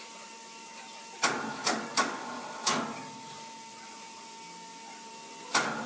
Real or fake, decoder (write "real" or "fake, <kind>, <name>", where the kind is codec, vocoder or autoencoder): real